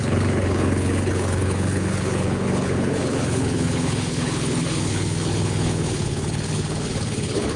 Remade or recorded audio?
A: remade